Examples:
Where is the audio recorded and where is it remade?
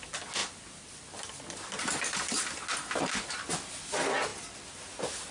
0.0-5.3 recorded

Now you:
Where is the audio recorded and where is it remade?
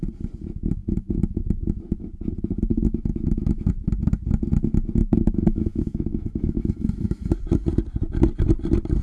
0.0-0.8 recorded; 0.8-1.4 remade; 1.4-2.7 recorded; 2.7-3.6 remade; 3.6-5.0 recorded; 5.0-7.3 remade; 7.3-9.0 recorded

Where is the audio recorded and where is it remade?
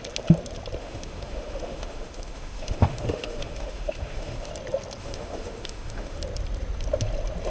0.0-0.8 recorded; 0.8-4.5 remade; 4.5-5.0 recorded; 5.0-6.2 remade; 6.2-7.5 recorded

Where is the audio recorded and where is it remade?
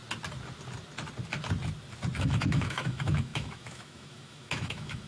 0.0-2.2 recorded; 2.2-5.1 remade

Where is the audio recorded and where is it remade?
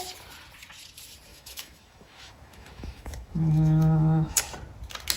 0.0-1.3 recorded; 1.3-4.4 remade; 4.4-5.2 recorded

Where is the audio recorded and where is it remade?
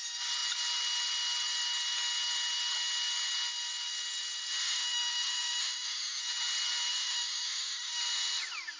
0.0-4.6 recorded; 4.6-6.2 remade; 6.2-6.9 recorded; 6.9-8.0 remade; 8.0-8.8 recorded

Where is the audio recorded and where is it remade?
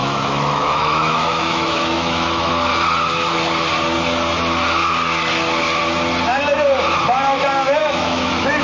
0.0-2.5 remade; 2.5-7.8 recorded; 7.8-8.6 remade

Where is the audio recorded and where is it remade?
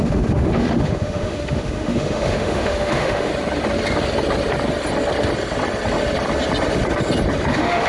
0.0-3.3 remade; 3.3-7.5 recorded; 7.5-7.9 remade